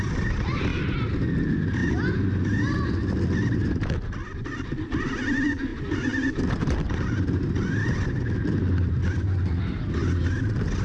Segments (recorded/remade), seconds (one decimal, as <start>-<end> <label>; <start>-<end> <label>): 0.0-5.7 recorded; 5.7-7.5 remade; 7.5-10.8 recorded

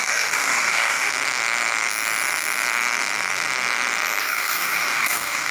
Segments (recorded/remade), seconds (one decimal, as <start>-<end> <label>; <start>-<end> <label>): 0.0-1.1 remade; 1.1-4.2 recorded; 4.2-5.5 remade

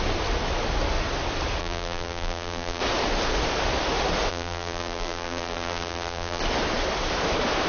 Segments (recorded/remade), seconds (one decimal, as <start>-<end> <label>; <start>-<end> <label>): 0.0-1.6 recorded; 1.6-2.8 remade; 2.8-4.3 recorded; 4.3-6.4 remade; 6.4-7.7 recorded

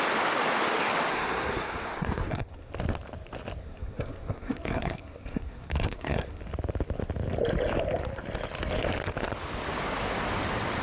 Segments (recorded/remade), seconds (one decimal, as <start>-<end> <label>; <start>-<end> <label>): 0.0-1.1 recorded; 1.1-2.7 remade; 2.7-3.6 recorded; 3.6-6.4 remade; 6.4-10.8 recorded

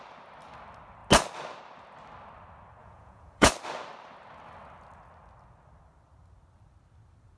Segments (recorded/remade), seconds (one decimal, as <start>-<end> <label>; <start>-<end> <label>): 0.0-2.8 recorded; 2.8-3.5 remade; 3.5-7.4 recorded

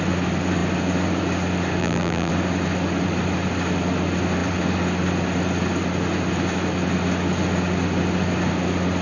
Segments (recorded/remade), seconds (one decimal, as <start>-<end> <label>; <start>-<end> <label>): 0.0-1.8 recorded; 1.8-2.3 remade; 2.3-9.0 recorded

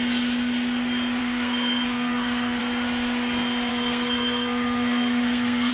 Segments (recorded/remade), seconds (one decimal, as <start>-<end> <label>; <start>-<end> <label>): 0.0-1.2 recorded; 1.2-2.6 remade; 2.6-3.7 recorded; 3.7-5.7 remade